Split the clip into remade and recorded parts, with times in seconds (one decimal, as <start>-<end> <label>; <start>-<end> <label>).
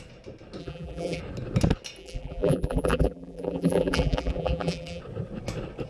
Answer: 0.0-0.6 recorded; 0.6-1.2 remade; 1.2-2.0 recorded; 2.0-5.0 remade; 5.0-5.9 recorded